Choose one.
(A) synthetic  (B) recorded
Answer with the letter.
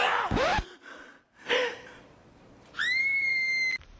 A